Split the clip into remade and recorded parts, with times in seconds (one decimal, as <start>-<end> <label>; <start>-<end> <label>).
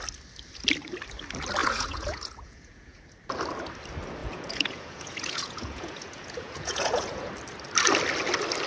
0.0-1.6 recorded; 1.6-3.0 remade; 3.0-4.2 recorded; 4.2-7.3 remade; 7.3-8.7 recorded